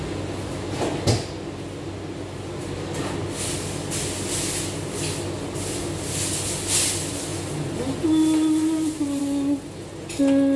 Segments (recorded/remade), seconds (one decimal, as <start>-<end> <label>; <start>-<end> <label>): 0.0-10.6 recorded